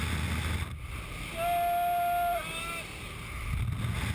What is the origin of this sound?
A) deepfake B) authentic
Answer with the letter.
B